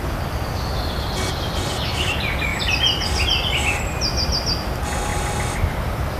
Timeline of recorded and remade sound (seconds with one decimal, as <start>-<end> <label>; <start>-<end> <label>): 0.0-2.5 recorded; 2.5-3.7 remade; 3.7-6.2 recorded